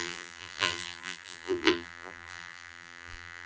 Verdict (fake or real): fake